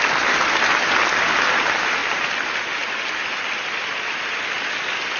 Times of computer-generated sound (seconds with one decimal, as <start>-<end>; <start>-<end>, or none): none